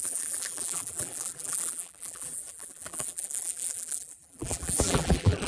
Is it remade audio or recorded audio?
remade